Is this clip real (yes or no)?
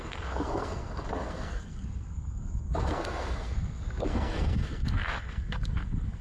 no